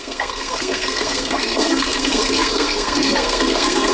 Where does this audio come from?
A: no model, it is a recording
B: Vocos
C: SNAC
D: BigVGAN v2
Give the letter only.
C